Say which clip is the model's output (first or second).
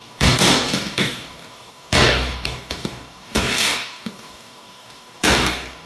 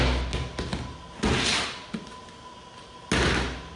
first